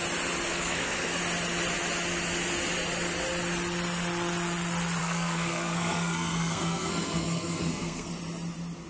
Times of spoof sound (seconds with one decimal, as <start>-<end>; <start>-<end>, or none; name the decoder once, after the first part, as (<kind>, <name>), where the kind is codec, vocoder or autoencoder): 0.5-1.2 (codec, SNAC); 5.0-8.1